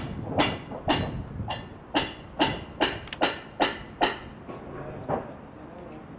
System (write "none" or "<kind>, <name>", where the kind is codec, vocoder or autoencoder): none